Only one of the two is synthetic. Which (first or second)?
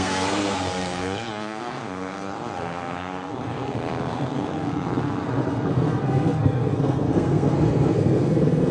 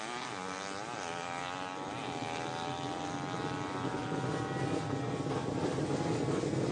first